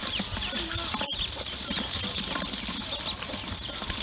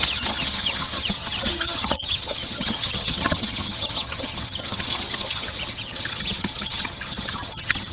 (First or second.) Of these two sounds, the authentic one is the first